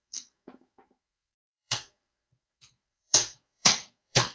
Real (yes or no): no